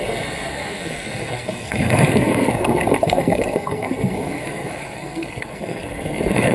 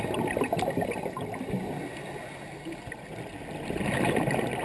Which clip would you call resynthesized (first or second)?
first